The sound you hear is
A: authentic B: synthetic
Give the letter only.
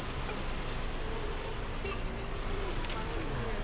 A